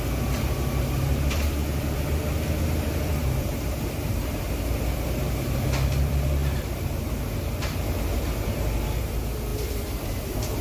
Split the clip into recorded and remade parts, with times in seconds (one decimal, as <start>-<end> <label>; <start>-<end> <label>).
0.0-1.6 remade; 1.6-2.6 recorded; 2.6-10.6 remade